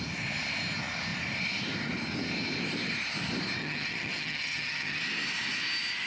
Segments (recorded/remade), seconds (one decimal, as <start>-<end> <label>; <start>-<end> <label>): 0.0-3.6 recorded; 3.6-5.0 remade; 5.0-6.1 recorded